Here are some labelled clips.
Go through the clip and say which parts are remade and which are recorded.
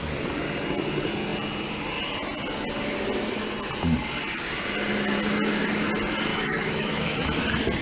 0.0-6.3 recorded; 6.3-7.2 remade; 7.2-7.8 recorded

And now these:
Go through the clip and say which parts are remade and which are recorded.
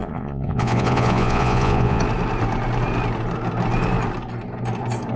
0.0-2.0 remade; 2.0-5.2 recorded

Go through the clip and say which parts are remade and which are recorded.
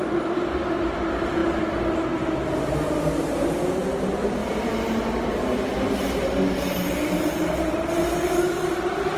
0.0-9.2 recorded